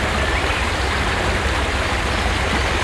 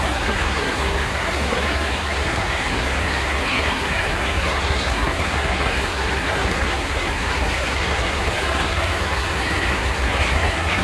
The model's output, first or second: second